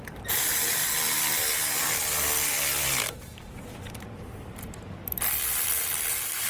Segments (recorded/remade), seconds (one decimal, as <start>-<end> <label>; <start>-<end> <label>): 0.0-0.8 remade; 0.8-3.9 recorded; 3.9-5.0 remade; 5.0-6.1 recorded; 6.1-6.5 remade

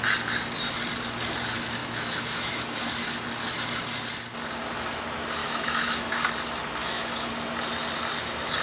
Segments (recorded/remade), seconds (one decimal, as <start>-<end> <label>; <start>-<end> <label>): 0.0-1.8 recorded; 1.8-2.8 remade; 2.8-5.4 recorded; 5.4-6.2 remade; 6.2-6.8 recorded; 6.8-7.3 remade; 7.3-8.6 recorded

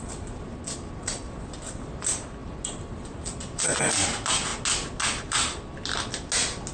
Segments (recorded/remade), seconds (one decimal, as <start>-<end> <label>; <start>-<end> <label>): 0.0-6.7 recorded